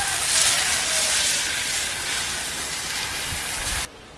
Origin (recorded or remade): recorded